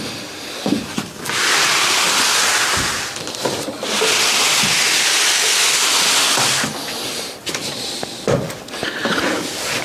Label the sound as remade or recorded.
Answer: recorded